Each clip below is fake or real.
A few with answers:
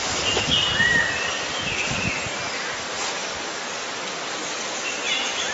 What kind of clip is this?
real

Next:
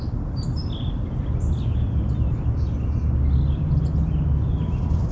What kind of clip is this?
real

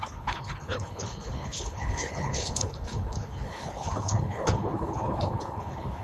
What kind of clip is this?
fake